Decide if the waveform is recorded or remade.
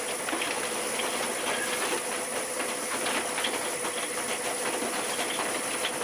recorded